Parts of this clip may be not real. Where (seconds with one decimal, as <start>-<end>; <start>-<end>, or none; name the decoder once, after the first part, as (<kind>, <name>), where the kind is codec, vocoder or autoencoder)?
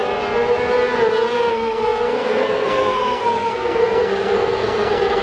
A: 1.5-5.2 (codec, SNAC)